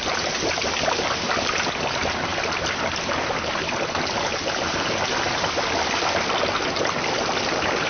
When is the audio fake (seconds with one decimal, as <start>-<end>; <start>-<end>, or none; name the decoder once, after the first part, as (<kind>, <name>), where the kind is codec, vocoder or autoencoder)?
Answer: none

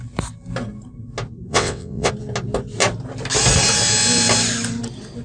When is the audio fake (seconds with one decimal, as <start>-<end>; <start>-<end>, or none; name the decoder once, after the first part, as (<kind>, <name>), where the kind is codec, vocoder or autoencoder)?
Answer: 1.5-2.1 (vocoder, WaveNeXt)